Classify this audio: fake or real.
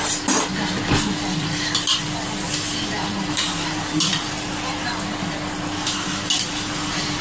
real